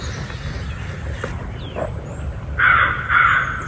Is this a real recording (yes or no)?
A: yes